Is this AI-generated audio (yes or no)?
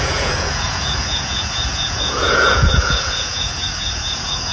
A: yes